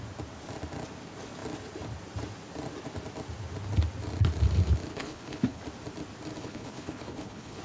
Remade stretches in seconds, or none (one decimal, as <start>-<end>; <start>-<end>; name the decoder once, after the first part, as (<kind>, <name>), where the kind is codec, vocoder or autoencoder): 4.9-5.6 (codec, HILCodec); 6.4-7.6